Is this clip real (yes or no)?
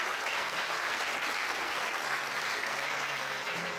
no